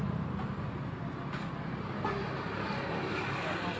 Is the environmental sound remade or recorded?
recorded